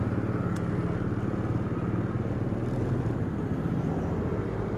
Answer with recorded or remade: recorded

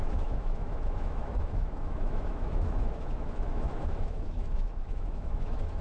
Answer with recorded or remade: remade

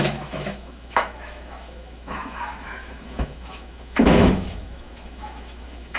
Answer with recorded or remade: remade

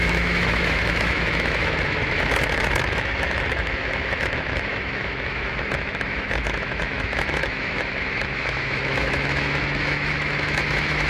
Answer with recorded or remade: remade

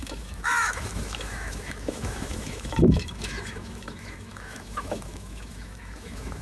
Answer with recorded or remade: remade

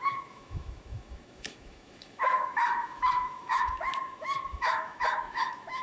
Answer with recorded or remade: remade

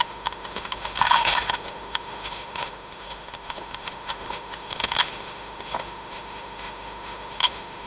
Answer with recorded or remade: remade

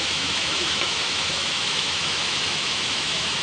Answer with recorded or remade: remade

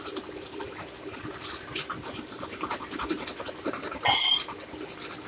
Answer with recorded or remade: recorded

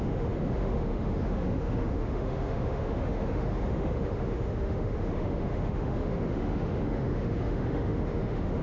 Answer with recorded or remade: remade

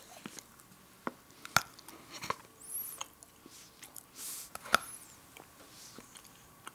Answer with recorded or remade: recorded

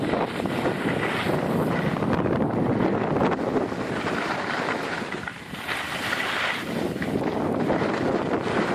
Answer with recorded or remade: recorded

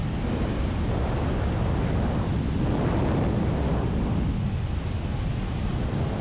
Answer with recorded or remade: recorded